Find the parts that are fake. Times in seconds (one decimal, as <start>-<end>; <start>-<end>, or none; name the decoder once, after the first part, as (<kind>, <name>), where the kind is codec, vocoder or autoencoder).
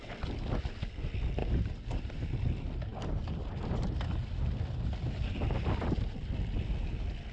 1.4-2.2 (vocoder, BigVGAN v2)